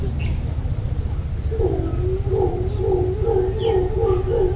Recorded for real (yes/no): yes